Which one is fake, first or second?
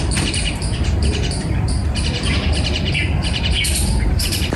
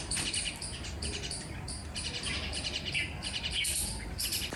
first